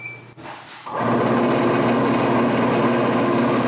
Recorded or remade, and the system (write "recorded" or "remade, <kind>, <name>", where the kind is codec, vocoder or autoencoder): recorded